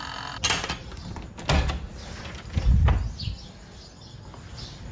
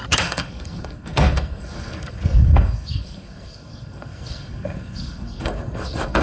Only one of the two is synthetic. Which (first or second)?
second